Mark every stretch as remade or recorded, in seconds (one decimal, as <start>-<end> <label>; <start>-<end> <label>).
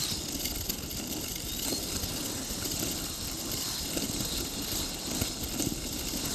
0.0-1.5 remade; 1.5-2.5 recorded; 2.5-6.3 remade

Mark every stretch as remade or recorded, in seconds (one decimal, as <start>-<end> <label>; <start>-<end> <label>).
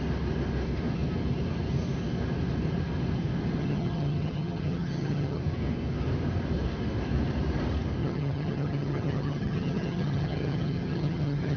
0.0-3.6 recorded; 3.6-5.4 remade; 5.4-8.0 recorded; 8.0-11.6 remade